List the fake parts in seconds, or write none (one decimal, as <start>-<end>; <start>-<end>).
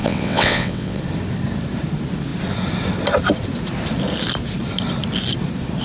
0.0-1.0